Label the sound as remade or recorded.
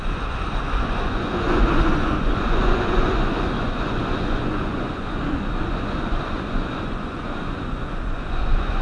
remade